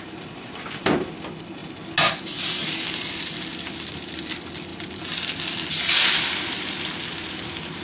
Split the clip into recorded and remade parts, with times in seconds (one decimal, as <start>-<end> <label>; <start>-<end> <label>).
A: 0.0-7.8 recorded